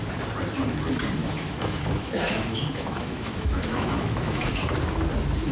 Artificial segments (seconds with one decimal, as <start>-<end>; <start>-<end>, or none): 1.2-4.5

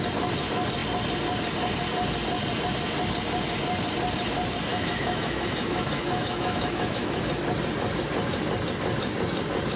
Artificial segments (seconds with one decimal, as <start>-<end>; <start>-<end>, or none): 4.7-7.2

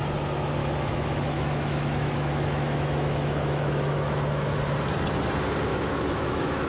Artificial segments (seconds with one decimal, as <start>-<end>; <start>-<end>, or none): 0.6-4.6; 5.7-6.7